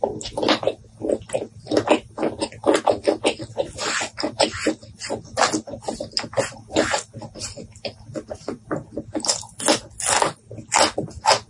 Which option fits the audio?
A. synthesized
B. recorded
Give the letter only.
B